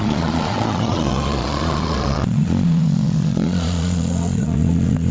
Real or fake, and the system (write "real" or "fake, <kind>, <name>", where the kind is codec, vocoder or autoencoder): fake, vocoder, Vocos